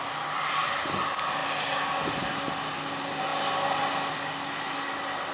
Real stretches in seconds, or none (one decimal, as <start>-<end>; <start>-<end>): 0.0-5.3